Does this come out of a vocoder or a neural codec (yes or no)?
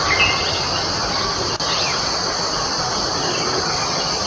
no